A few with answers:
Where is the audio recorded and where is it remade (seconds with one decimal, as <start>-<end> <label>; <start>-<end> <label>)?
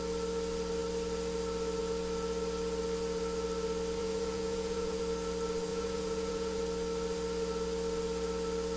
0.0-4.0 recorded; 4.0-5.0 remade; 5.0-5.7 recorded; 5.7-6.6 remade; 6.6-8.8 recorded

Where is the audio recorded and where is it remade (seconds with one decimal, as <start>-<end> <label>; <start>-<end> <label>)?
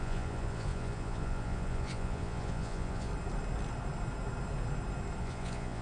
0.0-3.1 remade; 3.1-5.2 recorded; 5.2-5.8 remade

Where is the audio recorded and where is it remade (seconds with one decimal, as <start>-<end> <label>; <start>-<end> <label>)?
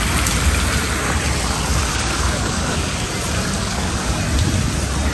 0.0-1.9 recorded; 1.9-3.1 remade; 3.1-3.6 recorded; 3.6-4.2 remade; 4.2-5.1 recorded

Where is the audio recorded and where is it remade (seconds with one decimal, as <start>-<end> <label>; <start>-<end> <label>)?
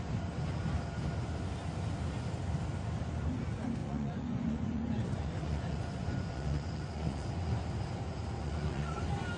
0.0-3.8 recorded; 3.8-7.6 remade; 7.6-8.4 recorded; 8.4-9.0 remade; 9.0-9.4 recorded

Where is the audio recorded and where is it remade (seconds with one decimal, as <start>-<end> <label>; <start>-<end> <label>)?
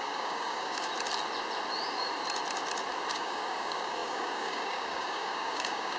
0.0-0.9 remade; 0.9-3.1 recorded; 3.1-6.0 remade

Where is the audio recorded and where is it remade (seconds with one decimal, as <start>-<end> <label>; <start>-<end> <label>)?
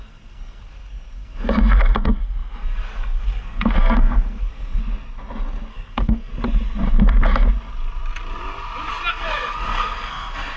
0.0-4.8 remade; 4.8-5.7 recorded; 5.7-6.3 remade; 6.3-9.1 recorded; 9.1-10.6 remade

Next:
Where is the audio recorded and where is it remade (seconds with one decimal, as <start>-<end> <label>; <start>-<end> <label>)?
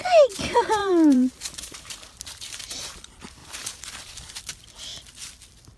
0.0-0.8 recorded; 0.8-3.0 remade; 3.0-3.4 recorded; 3.4-4.4 remade; 4.4-5.8 recorded